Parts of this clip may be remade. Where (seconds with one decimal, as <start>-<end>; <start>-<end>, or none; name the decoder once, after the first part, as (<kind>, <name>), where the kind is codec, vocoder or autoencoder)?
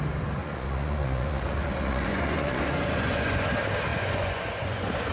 0.4-3.5 (vocoder, Vocos); 3.9-5.1